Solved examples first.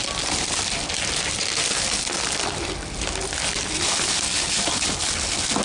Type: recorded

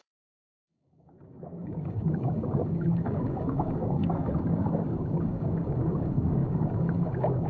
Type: remade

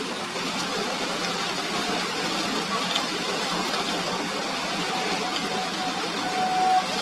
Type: recorded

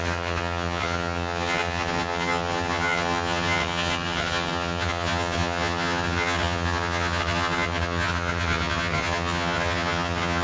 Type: remade